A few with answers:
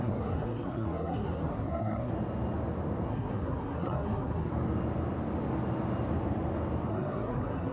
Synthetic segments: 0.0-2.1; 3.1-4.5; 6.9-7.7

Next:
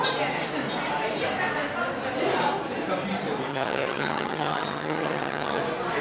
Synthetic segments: 3.5-5.6